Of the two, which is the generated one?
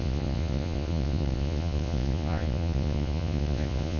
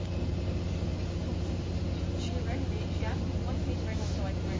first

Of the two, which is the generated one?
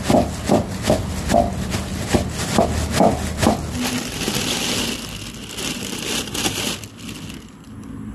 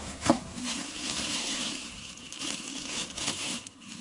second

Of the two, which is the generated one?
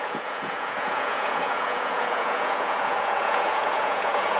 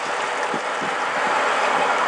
first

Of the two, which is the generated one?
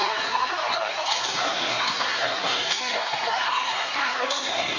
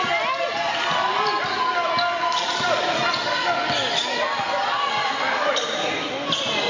first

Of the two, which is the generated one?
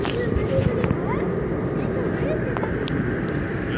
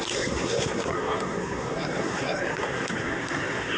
second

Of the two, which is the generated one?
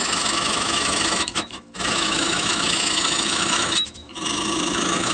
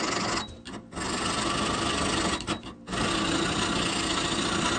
first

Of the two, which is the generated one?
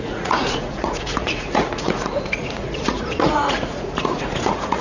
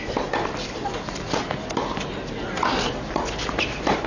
first